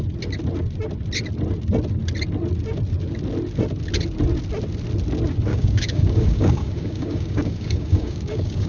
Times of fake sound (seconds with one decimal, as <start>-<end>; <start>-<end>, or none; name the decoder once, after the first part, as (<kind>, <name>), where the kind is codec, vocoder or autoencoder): 5.5-8.7 (codec, DAC)